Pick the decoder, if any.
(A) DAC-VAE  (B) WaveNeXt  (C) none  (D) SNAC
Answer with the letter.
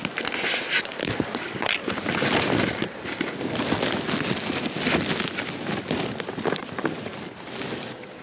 C